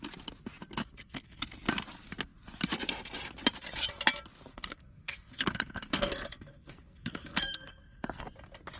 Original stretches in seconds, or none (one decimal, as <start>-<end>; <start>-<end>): 0.0-0.8; 1.4-4.5; 8.2-8.8

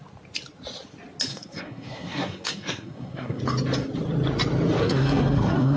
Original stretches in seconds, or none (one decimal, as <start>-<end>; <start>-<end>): 0.0-1.3; 3.4-4.8

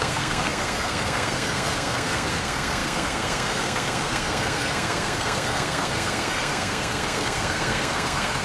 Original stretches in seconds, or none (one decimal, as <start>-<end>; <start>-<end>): none

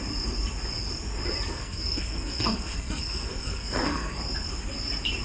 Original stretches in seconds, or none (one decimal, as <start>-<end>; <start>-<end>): 0.0-1.5; 4.2-5.2

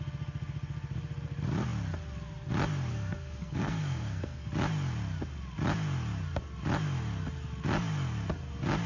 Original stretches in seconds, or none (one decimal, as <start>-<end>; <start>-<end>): 0.0-2.9; 4.5-8.9

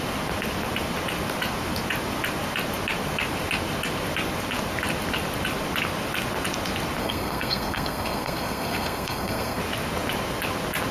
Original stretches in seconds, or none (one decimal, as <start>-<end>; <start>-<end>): 0.0-7.0; 9.6-10.9

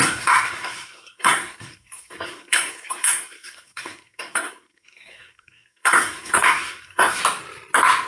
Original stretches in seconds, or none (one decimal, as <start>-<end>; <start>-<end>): 7.2-8.1

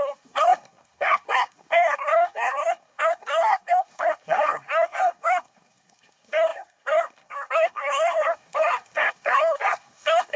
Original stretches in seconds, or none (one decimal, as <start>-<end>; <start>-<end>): none